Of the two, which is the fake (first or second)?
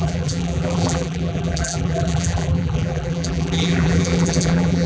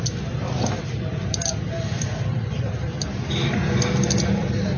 first